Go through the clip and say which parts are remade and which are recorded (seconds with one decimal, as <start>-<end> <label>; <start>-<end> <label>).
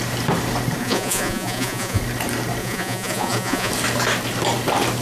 0.0-0.8 recorded; 0.8-2.0 remade; 2.0-2.6 recorded; 2.6-3.7 remade; 3.7-5.0 recorded